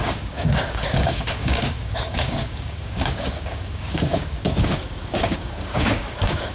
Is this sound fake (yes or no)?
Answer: yes